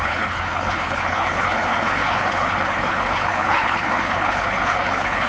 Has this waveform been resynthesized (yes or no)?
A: yes